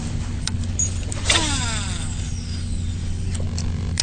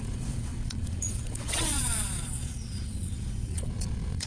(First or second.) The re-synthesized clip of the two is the second